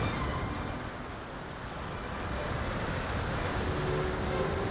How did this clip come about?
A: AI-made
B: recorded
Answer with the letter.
B